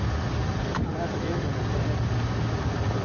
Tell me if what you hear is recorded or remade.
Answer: recorded